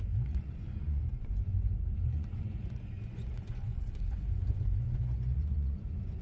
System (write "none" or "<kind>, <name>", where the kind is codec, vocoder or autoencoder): vocoder, Vocos